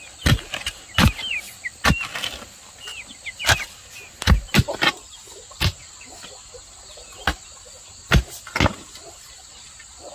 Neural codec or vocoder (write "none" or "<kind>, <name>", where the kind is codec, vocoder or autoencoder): none